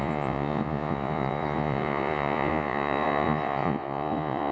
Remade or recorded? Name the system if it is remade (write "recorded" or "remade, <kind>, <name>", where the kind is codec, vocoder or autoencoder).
remade, vocoder, Vocos